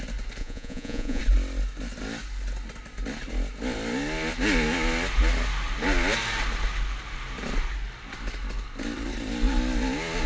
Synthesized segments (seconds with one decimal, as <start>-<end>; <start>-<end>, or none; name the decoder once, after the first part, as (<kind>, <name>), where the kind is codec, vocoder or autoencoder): 0.4-1.2 (vocoder, Vocos)